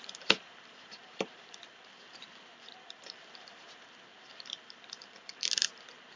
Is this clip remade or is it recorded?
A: remade